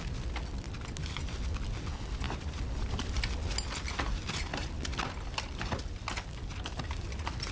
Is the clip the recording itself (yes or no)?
yes